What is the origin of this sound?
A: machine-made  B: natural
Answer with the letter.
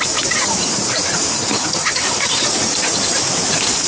B